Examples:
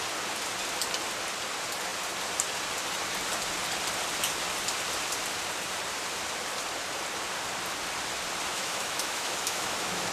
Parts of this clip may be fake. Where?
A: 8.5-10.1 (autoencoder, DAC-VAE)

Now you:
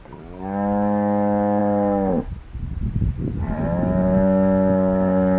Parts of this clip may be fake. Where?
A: 1.6-2.3 (autoencoder, DAC-VAE)

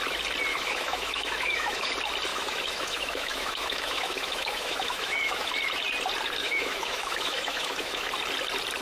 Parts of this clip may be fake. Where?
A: 0.5-1.9 (autoencoder, DAC-VAE); 2.3-5.5; 6.4-8.1

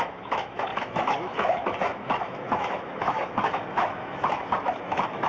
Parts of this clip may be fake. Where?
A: 0.0-5.3 (autoencoder, DAC-VAE)

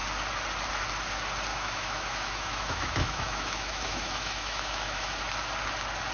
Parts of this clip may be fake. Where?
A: 1.5-5.2 (autoencoder, DAC-VAE)

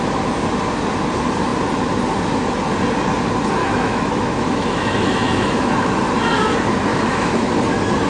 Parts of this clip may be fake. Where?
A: 3.6-5.9 (autoencoder, DAC-VAE); 6.9-7.5

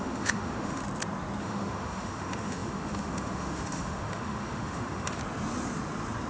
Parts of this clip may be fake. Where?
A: 0.0-0.8 (autoencoder, DAC-VAE); 1.4-5.2

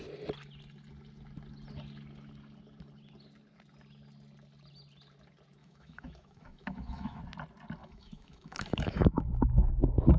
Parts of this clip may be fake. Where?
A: 5.6-7.2 (autoencoder, DAC-VAE); 7.8-9.7